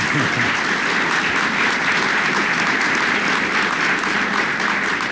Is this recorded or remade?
recorded